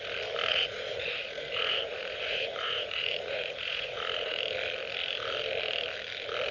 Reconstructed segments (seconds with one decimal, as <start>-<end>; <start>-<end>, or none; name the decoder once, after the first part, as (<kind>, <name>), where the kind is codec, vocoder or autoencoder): 0.5-4.4 (vocoder, Vocos)